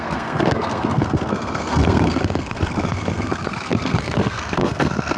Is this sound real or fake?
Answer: fake